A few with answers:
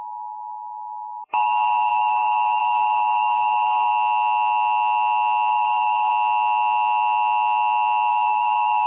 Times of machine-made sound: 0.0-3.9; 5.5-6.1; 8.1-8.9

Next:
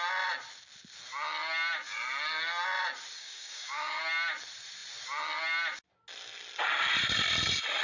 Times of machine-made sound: 3.1-4.0

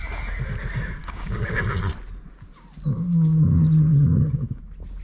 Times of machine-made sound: 1.0-1.6; 3.9-4.6